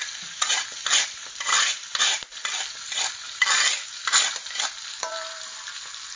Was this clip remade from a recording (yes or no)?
yes